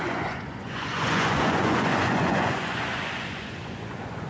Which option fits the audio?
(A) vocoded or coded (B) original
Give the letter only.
A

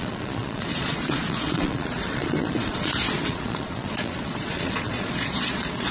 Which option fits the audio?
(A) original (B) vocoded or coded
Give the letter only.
B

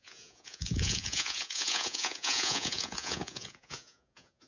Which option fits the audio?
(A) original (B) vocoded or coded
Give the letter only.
B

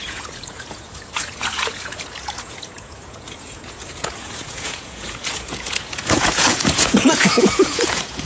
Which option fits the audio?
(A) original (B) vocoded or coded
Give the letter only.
B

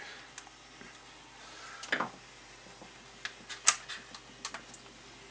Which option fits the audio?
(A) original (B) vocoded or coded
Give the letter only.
A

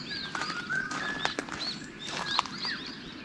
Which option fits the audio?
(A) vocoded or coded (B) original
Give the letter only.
B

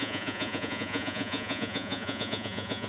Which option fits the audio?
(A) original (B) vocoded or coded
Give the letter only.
B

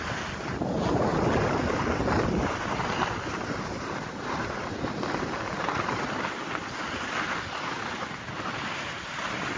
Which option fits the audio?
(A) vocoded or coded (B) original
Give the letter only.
B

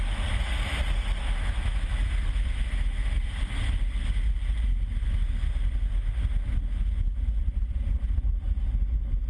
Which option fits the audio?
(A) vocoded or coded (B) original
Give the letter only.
B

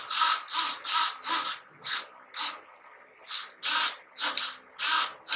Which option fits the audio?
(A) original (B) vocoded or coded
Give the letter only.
A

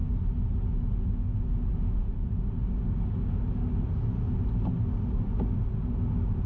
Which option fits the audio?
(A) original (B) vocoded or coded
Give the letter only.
A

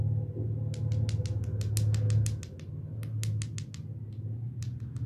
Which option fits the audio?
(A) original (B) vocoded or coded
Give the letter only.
A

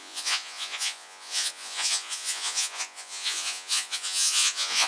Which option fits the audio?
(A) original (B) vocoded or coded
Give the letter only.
B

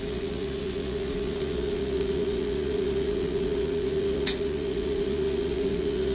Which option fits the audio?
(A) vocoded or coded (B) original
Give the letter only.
A